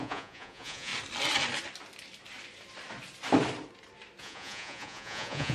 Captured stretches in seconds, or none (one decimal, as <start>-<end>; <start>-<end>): 0.9-4.2